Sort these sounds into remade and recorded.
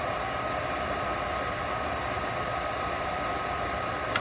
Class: recorded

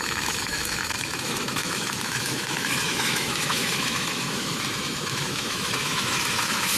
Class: remade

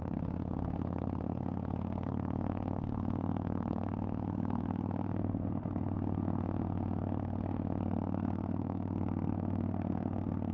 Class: remade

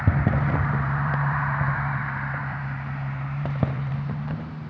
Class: remade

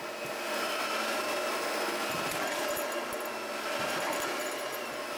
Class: recorded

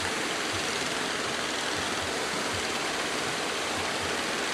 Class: recorded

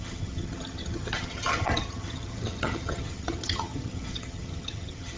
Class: remade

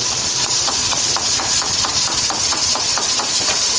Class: remade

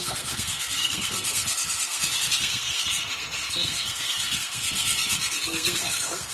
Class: remade